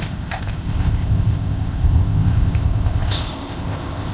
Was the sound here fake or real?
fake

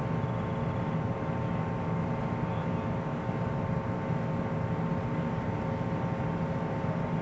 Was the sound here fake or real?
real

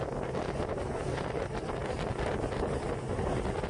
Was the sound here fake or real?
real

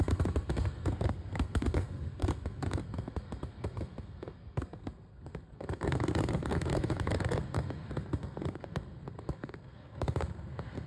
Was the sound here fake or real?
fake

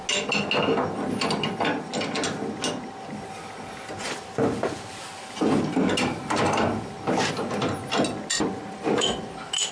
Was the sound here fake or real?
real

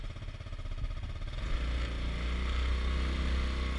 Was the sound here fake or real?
real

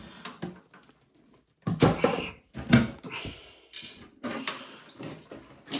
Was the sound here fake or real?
real